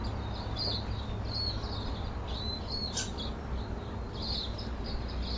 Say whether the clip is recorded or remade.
recorded